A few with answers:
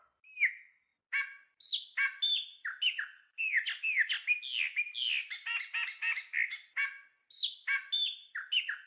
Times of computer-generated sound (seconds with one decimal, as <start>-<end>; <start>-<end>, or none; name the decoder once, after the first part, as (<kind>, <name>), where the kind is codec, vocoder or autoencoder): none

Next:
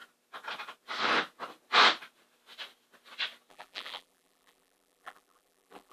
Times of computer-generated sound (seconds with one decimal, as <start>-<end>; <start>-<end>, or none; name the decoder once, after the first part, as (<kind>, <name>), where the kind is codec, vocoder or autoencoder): 3.5-5.9 (vocoder, BigVGAN v2)

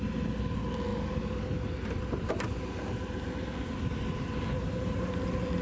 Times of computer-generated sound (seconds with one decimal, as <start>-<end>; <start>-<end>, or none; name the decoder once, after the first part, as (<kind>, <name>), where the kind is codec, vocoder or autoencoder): none

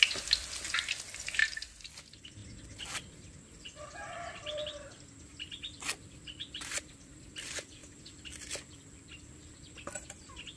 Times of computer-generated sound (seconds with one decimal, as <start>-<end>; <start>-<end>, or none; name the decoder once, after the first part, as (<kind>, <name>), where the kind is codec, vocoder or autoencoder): 1.4-2.0 (vocoder, BigVGAN v2); 2.4-7.3; 7.8-8.5

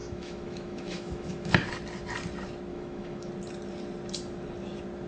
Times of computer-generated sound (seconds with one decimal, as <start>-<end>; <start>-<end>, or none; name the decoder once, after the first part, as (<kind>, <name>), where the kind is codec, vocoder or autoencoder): 0.0-1.5 (autoencoder, DAC-VAE); 2.7-3.3

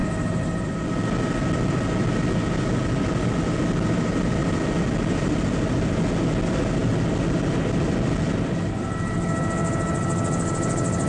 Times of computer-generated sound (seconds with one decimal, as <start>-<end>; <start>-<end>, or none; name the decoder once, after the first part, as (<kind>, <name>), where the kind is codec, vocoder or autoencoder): none